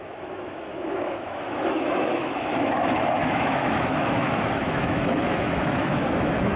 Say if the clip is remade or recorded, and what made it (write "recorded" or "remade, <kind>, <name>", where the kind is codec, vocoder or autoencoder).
remade, autoencoder, DAC-VAE